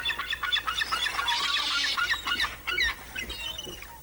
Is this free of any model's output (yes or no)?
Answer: yes